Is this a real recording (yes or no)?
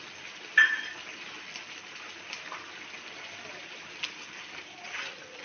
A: yes